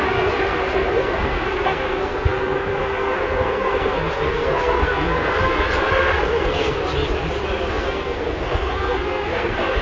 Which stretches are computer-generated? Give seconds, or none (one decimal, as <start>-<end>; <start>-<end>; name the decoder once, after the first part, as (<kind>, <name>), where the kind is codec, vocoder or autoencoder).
0.0-6.8 (codec, SNAC); 7.7-9.8